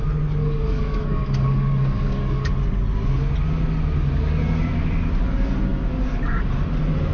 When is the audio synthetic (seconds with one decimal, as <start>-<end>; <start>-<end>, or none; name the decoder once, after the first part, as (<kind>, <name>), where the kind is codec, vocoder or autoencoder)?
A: 0.4-2.5 (codec, DAC)